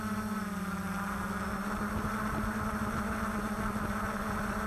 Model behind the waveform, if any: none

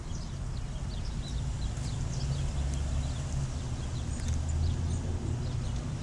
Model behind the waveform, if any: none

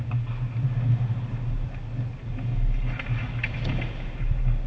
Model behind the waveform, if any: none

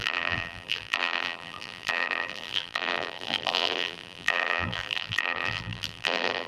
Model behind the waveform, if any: vocoder, BigVGAN v2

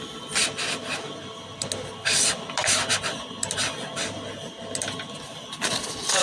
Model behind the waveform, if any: none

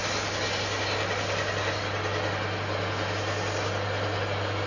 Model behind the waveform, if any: none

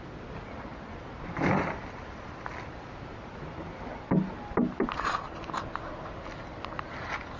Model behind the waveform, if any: none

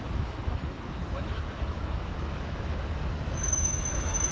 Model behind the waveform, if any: autoencoder, DAC-VAE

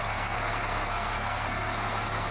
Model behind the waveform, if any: codec, SNAC